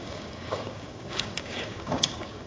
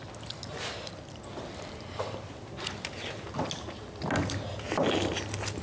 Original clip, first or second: second